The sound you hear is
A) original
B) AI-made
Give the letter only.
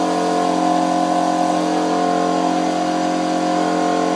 A